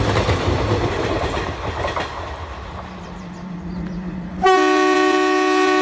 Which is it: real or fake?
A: real